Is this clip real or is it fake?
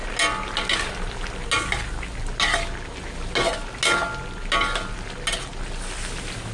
real